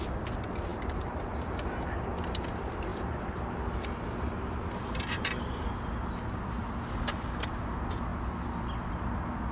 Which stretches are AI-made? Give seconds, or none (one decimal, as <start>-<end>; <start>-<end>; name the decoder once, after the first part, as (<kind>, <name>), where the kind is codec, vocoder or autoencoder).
0.7-1.5 (vocoder, BigVGAN v2); 2.9-4.0; 8.1-8.8